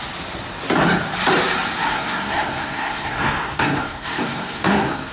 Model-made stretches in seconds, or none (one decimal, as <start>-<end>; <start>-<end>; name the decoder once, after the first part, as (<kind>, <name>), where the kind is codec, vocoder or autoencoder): 1.9-5.1 (codec, SNAC)